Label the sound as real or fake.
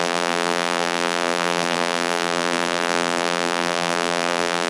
fake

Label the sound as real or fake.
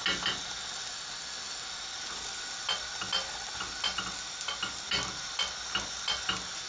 real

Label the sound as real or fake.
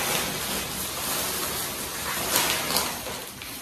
real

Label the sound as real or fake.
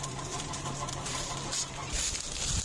fake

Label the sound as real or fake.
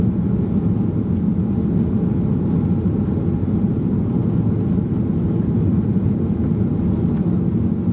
real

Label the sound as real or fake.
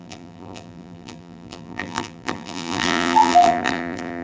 fake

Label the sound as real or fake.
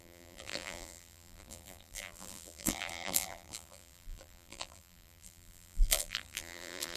fake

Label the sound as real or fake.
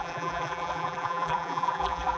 fake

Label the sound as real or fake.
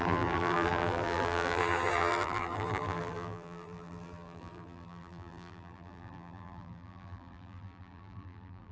fake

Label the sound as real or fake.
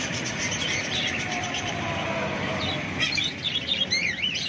fake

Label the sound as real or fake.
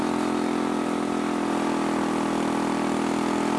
real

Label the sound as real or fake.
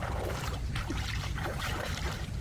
fake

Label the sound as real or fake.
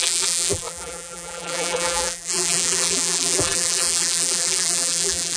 fake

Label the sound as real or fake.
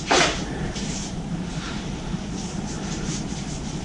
fake